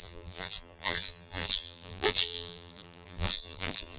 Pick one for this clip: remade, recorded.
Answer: remade